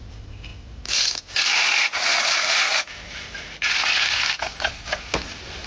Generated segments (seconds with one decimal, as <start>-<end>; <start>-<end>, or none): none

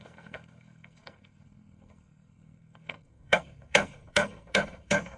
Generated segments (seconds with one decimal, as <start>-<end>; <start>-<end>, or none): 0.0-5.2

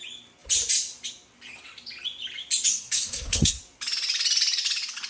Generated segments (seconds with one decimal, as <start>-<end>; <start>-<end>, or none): 2.7-3.6